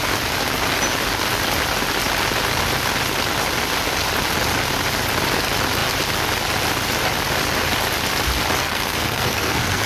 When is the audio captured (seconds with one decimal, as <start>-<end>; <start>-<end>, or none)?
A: 0.0-8.6